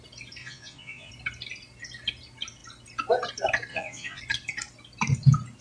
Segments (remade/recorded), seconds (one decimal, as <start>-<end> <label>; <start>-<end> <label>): 0.0-0.4 recorded; 0.4-1.1 remade; 1.1-3.7 recorded; 3.7-4.2 remade; 4.2-5.6 recorded